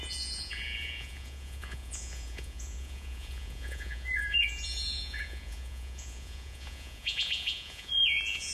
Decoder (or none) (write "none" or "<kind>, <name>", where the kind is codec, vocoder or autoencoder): vocoder, Vocos